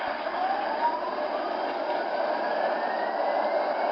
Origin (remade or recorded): recorded